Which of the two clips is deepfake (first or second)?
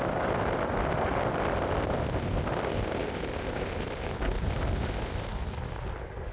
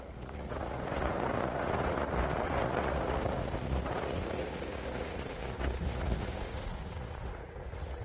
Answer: second